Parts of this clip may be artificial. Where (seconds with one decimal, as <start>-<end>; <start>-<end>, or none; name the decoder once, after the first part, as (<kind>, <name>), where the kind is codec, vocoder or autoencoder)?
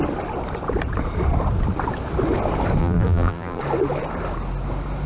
2.8-3.6 (vocoder, BigVGAN v2)